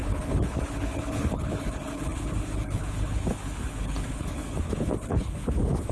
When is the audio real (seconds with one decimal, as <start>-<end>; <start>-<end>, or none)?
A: none